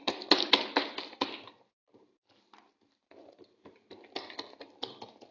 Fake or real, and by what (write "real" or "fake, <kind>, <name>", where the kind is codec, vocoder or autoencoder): real